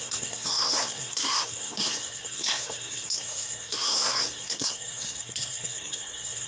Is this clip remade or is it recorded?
remade